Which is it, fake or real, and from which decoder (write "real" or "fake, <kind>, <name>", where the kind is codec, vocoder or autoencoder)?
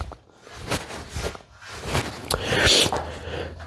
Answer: real